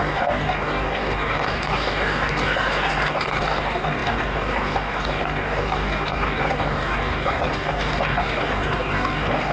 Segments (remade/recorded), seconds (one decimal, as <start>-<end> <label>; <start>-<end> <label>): 0.0-9.5 remade